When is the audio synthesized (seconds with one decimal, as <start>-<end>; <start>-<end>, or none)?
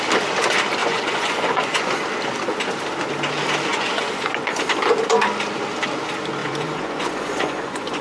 0.8-2.0; 3.7-4.6; 6.4-8.0